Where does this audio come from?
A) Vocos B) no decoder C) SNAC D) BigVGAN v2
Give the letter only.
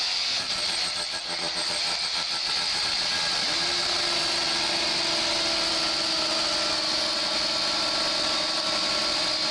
B